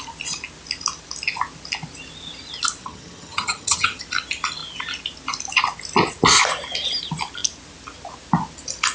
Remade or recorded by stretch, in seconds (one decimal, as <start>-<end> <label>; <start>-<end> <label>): 0.0-2.8 recorded; 2.8-4.0 remade; 4.0-8.9 recorded